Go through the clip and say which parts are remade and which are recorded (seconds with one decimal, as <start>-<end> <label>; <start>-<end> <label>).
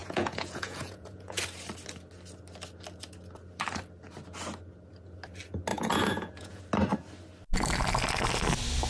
0.0-1.4 remade; 1.4-5.7 recorded; 5.7-6.6 remade; 6.6-8.9 recorded